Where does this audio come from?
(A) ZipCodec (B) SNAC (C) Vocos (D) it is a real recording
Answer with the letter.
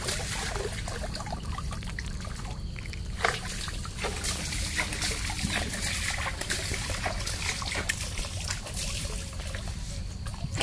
D